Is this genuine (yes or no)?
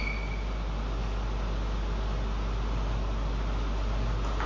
yes